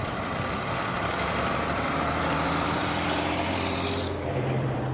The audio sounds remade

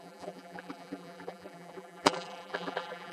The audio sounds remade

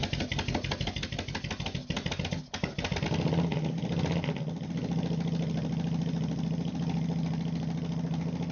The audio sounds recorded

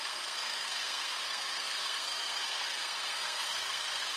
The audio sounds remade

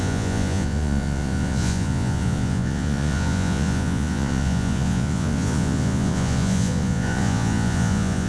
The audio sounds remade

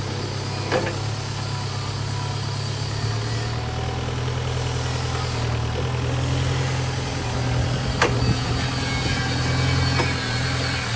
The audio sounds recorded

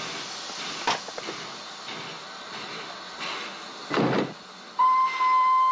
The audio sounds recorded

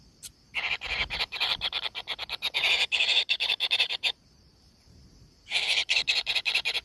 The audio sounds remade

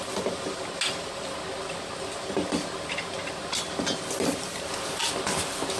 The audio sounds recorded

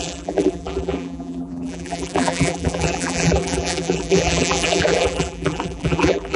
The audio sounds remade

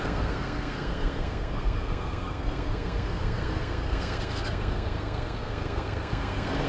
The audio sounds remade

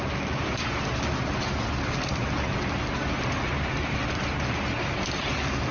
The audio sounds recorded